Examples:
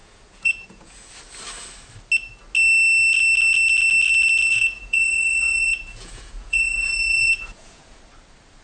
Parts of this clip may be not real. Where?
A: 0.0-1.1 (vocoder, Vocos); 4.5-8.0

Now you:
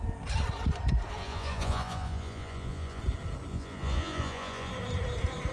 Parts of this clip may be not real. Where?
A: 1.2-3.0 (vocoder, Vocos); 3.5-4.7

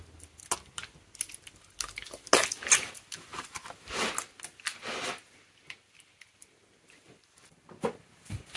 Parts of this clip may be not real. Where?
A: none

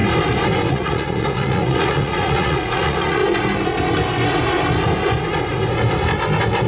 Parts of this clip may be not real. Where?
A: 0.7-3.2 (vocoder, Vocos)

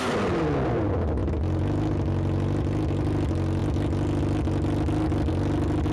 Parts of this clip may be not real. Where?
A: none

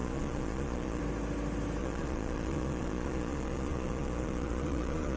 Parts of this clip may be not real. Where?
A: 0.0-1.0 (vocoder, Vocos); 1.8-5.2

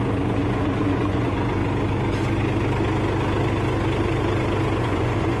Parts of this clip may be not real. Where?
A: 0.0-1.6 (vocoder, Vocos); 4.8-5.4